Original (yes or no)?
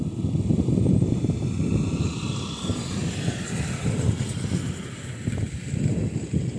yes